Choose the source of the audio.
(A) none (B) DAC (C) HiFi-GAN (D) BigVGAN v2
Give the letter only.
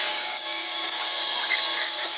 B